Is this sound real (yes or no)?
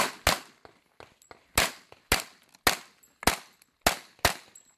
yes